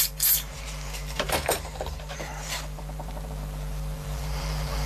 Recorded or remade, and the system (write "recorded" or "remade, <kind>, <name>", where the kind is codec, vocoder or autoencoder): remade, vocoder, BigVGAN v2